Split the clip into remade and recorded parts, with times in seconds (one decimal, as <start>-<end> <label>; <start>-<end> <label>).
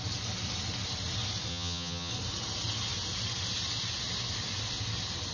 0.0-1.5 recorded; 1.5-2.1 remade; 2.1-5.3 recorded